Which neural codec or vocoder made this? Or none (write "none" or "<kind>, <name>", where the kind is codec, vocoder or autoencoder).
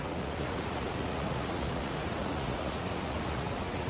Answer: vocoder, Vocos